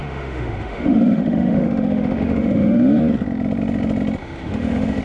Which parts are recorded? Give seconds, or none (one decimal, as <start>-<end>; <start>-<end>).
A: 3.0-4.2